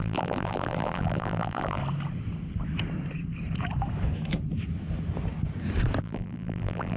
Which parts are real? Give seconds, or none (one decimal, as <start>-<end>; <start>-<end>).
1.8-6.0

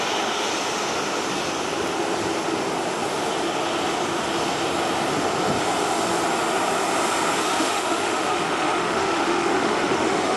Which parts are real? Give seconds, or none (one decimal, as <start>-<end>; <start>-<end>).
0.0-7.4